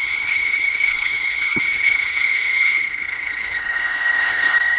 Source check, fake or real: fake